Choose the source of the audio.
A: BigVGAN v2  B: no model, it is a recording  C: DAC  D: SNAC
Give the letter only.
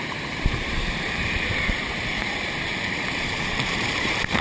A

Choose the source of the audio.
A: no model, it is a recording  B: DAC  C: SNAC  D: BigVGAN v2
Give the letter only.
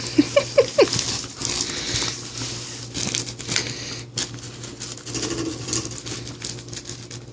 A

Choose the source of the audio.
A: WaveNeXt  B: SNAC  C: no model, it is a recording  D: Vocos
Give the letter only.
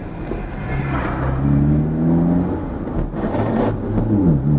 C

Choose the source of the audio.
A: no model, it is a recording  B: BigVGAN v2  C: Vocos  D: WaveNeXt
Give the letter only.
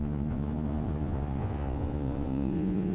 C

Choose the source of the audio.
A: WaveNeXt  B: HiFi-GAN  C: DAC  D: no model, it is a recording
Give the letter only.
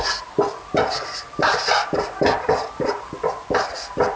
D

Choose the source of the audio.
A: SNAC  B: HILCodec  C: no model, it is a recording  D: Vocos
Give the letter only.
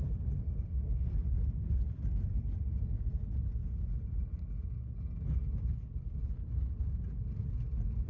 C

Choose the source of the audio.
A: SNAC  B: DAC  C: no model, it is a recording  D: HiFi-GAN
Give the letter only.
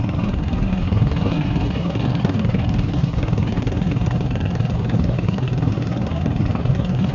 A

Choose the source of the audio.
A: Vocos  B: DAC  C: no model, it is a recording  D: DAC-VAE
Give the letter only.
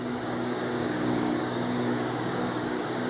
B